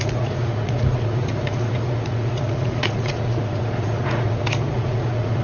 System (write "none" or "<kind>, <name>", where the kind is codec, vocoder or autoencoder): vocoder, Vocos